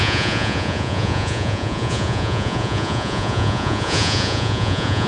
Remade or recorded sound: remade